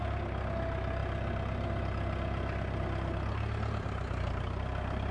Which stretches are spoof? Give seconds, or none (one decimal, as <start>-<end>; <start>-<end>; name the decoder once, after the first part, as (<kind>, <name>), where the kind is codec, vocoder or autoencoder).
none